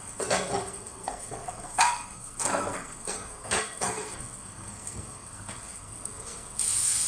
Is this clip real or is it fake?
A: fake